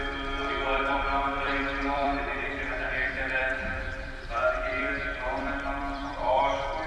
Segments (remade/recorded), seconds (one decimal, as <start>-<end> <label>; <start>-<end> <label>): 0.0-0.4 recorded; 0.4-2.5 remade; 2.5-3.0 recorded; 3.0-6.4 remade; 6.4-6.9 recorded